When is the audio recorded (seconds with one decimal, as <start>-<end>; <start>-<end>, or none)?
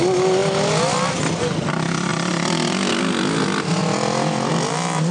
0.0-5.1